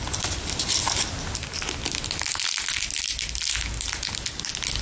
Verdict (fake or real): real